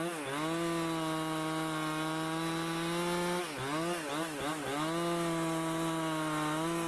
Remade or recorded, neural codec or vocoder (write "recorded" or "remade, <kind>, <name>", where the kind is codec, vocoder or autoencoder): recorded